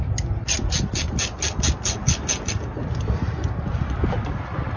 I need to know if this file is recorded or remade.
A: recorded